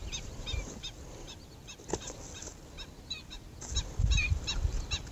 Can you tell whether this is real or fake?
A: real